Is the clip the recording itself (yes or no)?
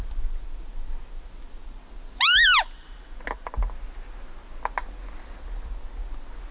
yes